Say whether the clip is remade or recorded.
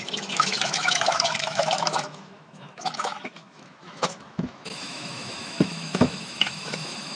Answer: remade